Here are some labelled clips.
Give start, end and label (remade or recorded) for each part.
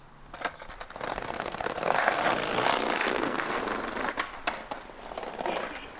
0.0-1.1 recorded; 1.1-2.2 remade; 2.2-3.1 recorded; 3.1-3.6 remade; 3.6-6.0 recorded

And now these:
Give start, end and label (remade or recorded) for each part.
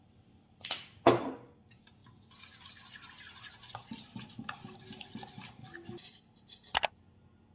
0.0-7.5 recorded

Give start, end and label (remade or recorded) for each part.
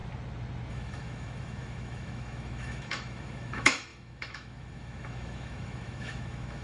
0.0-0.7 recorded; 0.7-6.6 remade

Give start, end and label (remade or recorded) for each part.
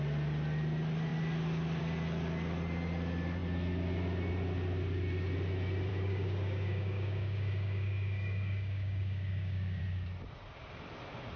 0.0-5.9 recorded; 5.9-9.8 remade; 9.8-11.4 recorded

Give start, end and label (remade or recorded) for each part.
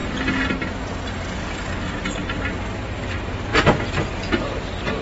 0.0-3.5 remade; 3.5-4.3 recorded; 4.3-5.0 remade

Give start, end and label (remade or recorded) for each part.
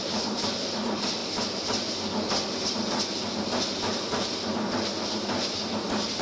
0.0-6.2 recorded